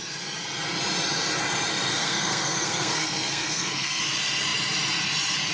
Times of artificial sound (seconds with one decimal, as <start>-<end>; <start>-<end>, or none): 1.9-4.0